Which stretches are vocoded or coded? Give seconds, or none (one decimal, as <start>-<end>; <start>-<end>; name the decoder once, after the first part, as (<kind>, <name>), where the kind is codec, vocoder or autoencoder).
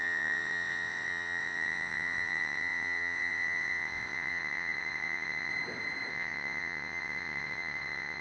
0.0-5.5 (vocoder, WaveNeXt); 6.1-8.2